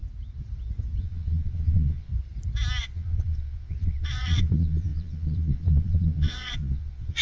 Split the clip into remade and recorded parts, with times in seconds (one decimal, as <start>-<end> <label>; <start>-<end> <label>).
0.0-1.0 recorded; 1.0-2.1 remade; 2.1-2.8 recorded; 2.8-7.2 remade